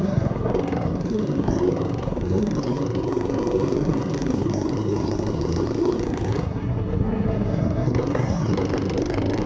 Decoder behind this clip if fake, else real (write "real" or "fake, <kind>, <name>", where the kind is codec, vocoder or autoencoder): fake, codec, SNAC